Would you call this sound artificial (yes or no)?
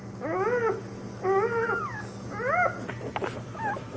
no